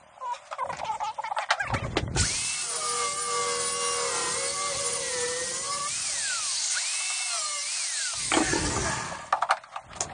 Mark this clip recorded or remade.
recorded